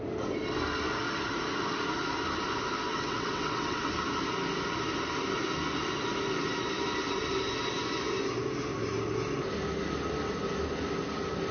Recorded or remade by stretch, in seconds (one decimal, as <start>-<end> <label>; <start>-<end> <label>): 0.0-2.9 recorded; 2.9-3.9 remade; 3.9-11.5 recorded